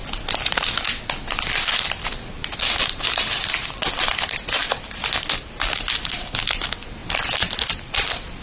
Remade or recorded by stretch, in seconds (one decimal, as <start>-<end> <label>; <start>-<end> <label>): 0.0-8.4 recorded